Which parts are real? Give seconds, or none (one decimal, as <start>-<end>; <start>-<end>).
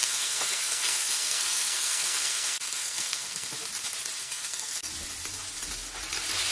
3.5-4.2; 4.9-6.5